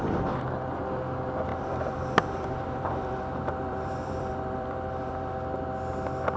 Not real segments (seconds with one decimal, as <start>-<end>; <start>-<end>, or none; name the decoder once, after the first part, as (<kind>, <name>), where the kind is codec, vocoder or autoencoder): 1.5-5.3 (vocoder, BigVGAN v2)